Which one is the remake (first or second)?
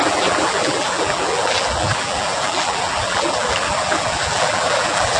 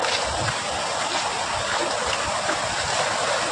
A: first